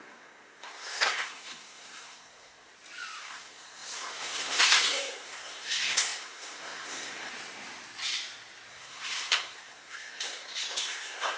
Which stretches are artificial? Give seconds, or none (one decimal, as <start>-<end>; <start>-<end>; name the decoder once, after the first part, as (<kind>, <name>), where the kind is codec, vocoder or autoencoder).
0.0-2.7 (codec, SNAC); 3.2-7.3; 8.7-11.4